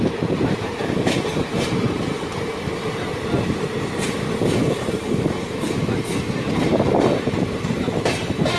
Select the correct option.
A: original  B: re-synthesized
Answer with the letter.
B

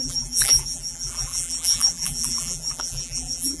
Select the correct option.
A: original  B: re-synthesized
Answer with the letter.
B